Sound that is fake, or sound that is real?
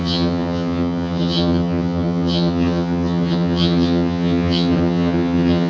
fake